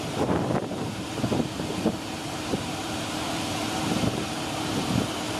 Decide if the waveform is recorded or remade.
remade